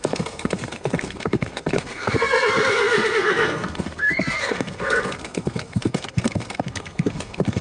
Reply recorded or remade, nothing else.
remade